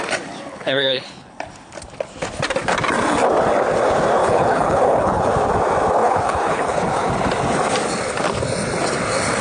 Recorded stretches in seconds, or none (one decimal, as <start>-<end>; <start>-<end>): 0.0-0.5; 1.3-4.2; 5.3-6.0; 7.1-9.4

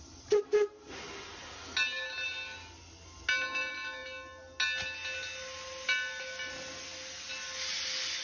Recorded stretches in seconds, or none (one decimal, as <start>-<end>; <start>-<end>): 0.0-8.2

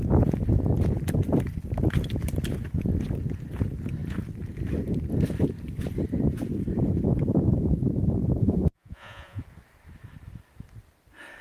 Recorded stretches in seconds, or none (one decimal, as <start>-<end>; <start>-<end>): 0.0-8.4; 9.4-11.4